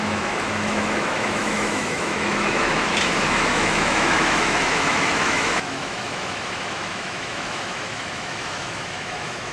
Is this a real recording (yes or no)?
no